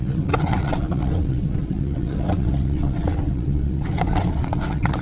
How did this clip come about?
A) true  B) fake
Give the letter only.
B